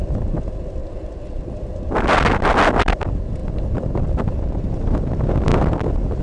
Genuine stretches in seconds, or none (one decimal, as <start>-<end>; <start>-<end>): 0.0-6.2